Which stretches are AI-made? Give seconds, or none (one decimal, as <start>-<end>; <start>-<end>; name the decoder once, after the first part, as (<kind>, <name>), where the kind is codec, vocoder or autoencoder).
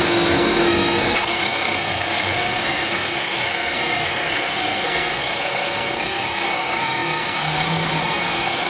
0.0-8.7 (codec, SNAC)